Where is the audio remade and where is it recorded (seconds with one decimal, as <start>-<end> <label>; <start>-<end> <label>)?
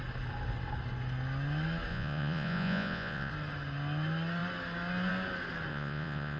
0.0-1.9 recorded; 1.9-3.3 remade; 3.3-5.7 recorded; 5.7-6.4 remade